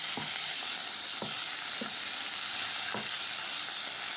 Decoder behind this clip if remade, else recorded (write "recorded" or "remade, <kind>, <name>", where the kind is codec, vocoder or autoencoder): recorded